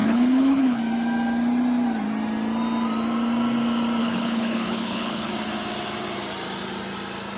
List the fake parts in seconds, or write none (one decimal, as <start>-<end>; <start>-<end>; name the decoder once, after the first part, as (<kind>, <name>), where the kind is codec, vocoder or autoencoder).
0.0-0.8 (codec, HILCodec); 4.0-5.3